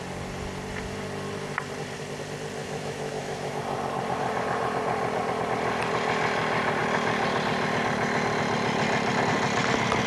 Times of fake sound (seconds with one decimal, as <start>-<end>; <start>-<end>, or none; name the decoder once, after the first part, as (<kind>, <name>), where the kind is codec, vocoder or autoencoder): 2.6-3.6 (autoencoder, DAC-VAE)